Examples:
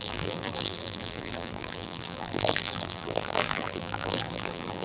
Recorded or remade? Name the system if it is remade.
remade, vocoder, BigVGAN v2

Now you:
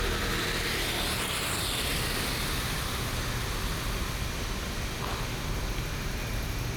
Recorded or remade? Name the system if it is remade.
recorded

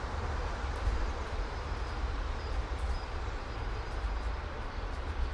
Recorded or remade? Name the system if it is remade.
remade, vocoder, BigVGAN v2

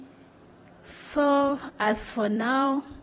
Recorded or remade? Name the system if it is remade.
remade, vocoder, BigVGAN v2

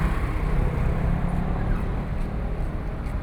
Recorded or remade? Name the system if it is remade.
remade, vocoder, BigVGAN v2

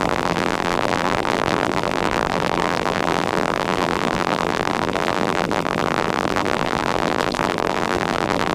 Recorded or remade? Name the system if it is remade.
remade, vocoder, BigVGAN v2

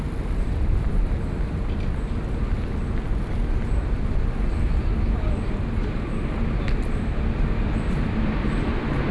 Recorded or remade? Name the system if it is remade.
recorded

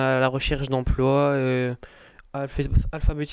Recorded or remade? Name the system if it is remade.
recorded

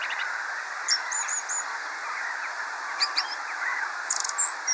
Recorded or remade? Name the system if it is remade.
remade, vocoder, BigVGAN v2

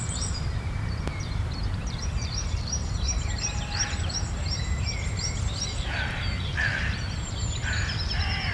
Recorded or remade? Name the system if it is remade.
remade, vocoder, BigVGAN v2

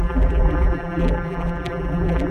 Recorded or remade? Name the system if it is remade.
remade, vocoder, BigVGAN v2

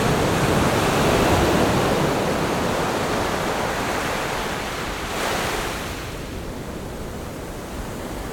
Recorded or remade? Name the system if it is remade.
remade, vocoder, BigVGAN v2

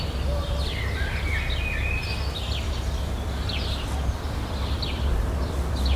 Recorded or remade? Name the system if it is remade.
recorded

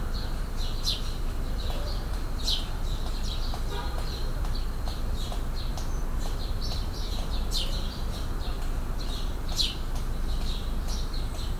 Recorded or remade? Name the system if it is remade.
remade, vocoder, BigVGAN v2